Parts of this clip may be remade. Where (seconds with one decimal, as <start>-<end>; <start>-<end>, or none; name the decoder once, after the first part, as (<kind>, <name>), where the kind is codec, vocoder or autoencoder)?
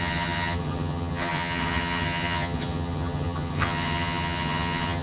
0.0-5.0 (vocoder, HiFi-GAN)